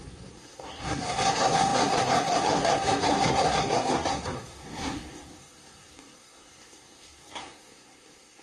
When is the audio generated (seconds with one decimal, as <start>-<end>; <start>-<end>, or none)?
0.0-8.4